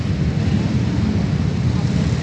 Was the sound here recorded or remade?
recorded